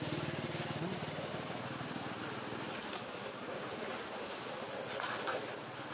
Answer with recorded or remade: recorded